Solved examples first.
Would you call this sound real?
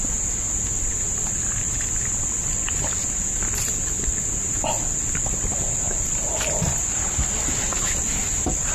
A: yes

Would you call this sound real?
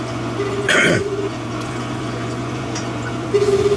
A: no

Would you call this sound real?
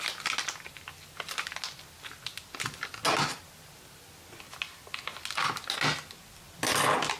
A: yes